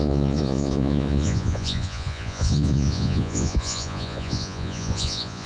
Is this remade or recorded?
remade